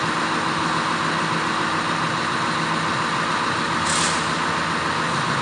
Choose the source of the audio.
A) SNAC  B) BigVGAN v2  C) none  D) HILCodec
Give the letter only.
C